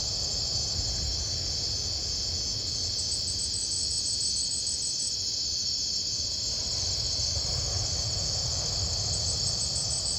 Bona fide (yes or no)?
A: yes